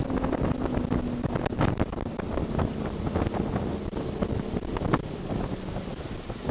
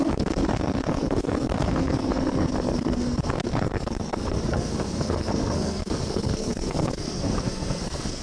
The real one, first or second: first